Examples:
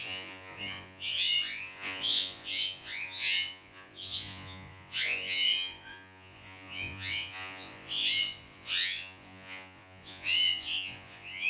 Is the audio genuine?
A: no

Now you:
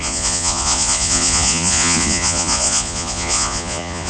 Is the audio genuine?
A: no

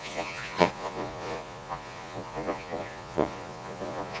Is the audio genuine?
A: no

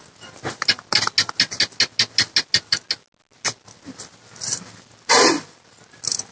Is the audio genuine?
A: yes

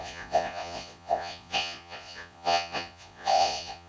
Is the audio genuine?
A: no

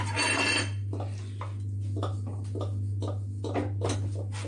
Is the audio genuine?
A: yes